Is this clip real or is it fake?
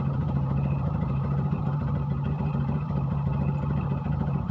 fake